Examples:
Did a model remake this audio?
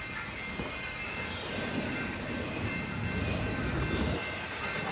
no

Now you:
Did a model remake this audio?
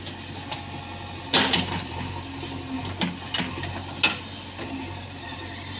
no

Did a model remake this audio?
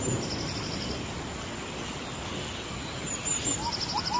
no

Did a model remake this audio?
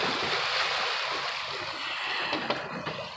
no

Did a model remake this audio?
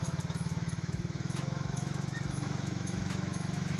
yes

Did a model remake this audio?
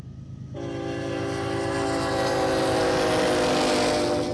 no